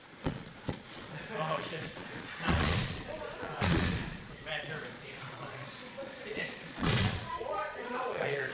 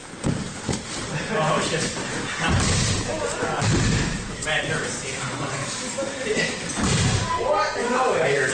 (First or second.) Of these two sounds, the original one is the second